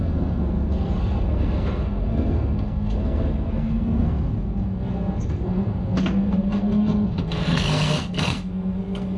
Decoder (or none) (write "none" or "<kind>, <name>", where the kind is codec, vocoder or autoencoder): codec, SNAC